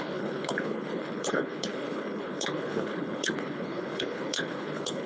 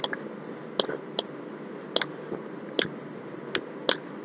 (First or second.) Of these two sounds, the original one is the second